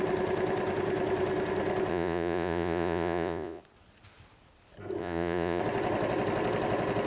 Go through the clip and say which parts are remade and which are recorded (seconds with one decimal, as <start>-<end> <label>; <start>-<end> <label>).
0.0-1.9 recorded; 1.9-3.6 remade; 3.6-5.0 recorded; 5.0-5.6 remade; 5.6-7.1 recorded